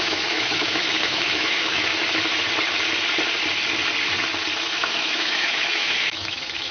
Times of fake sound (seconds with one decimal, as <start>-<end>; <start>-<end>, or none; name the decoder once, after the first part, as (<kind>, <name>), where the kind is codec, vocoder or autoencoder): 0.0-1.9 (autoencoder, DAC-VAE); 4.7-6.7